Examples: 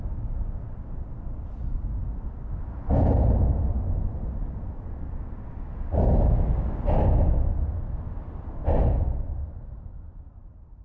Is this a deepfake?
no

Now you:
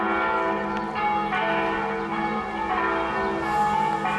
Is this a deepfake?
no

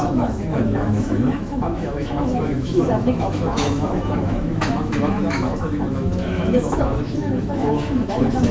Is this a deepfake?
yes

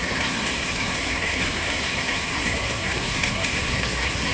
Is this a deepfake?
yes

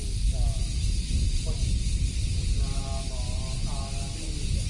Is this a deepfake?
no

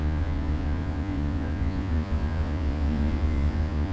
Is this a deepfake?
yes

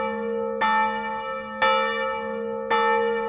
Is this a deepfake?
no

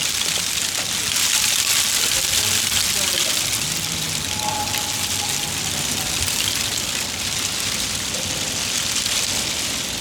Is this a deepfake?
no